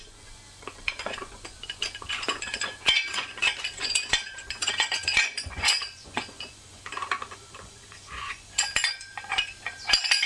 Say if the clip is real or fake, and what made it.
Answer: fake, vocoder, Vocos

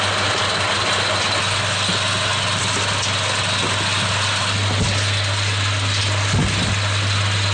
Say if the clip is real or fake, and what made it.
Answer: real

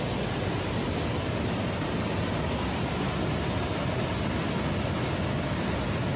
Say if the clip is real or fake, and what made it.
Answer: real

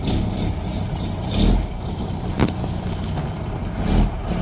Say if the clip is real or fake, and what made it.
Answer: real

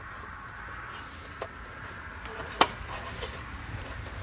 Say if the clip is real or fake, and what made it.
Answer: real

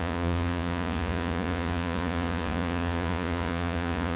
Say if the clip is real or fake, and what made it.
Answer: fake, vocoder, Vocos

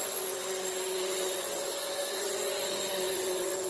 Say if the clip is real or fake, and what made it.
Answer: fake, vocoder, Vocos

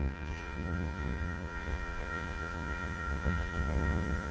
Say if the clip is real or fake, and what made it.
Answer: fake, vocoder, Vocos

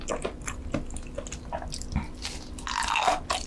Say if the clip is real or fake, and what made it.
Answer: real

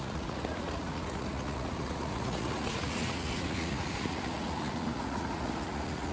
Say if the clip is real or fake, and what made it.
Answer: fake, vocoder, Vocos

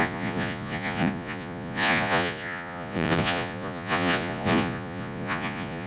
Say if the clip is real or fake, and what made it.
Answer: fake, vocoder, Vocos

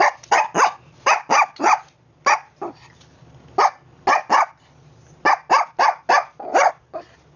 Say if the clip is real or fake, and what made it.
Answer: real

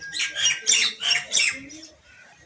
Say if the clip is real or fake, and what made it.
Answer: real